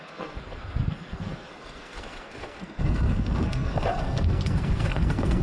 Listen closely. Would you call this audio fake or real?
fake